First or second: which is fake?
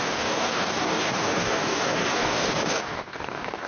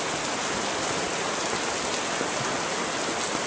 first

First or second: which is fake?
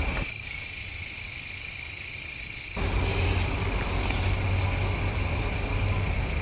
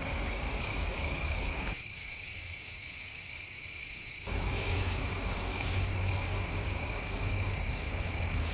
second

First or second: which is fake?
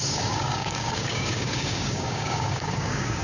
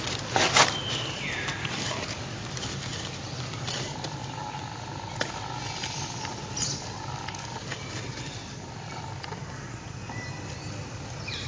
first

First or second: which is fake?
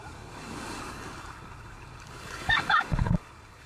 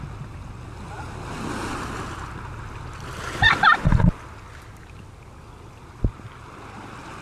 first